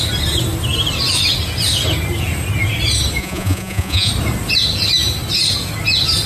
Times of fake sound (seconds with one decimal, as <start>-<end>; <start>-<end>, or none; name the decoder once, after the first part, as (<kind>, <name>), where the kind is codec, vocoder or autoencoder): 3.2-4.1 (vocoder, Vocos)